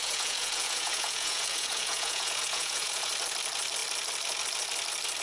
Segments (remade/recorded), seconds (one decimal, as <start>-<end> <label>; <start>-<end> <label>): 0.0-3.1 remade; 3.1-5.2 recorded